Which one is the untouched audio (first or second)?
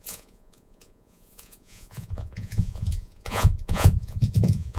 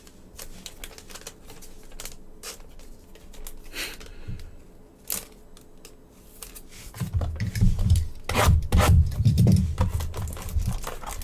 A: second